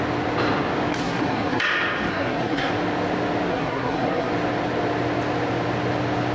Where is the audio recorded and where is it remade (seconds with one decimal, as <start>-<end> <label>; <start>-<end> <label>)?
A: 0.0-1.0 recorded; 1.0-1.6 remade; 1.6-2.1 recorded; 2.1-2.7 remade; 2.7-3.5 recorded; 3.5-4.3 remade; 4.3-6.3 recorded